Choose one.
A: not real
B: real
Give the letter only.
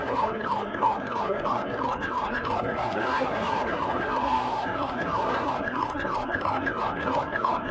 A